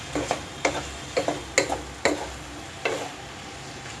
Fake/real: real